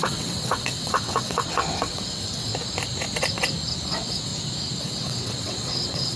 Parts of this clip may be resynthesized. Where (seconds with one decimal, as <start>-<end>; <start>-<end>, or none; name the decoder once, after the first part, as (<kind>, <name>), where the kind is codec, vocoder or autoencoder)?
0.0-2.5 (vocoder, WaveNeXt); 3.9-4.3; 4.8-6.2